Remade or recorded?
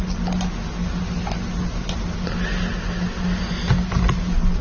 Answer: recorded